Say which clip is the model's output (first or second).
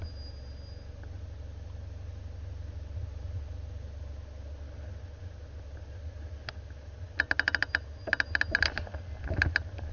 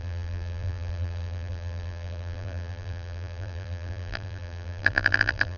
second